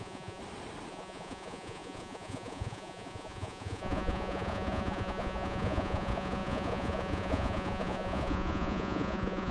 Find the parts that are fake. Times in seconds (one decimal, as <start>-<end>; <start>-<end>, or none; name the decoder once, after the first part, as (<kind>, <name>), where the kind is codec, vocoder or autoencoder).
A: 0.0-0.4 (vocoder, Vocos); 0.9-9.5